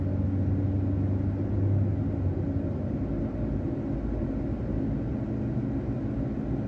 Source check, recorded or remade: recorded